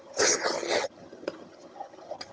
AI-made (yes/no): yes